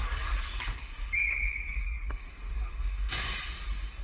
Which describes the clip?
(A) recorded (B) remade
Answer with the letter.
B